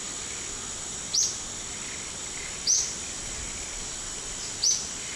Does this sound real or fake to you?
real